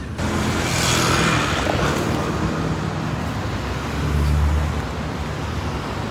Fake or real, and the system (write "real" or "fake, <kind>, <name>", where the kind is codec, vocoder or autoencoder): real